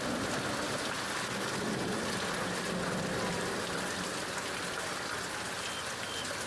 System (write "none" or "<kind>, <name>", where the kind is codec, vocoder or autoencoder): none